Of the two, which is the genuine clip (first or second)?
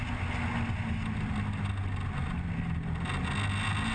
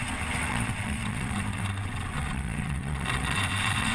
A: first